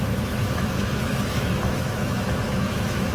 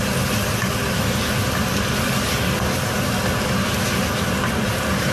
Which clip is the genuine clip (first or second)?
second